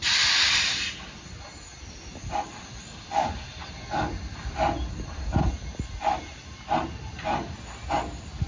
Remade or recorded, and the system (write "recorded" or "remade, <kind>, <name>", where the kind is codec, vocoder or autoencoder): recorded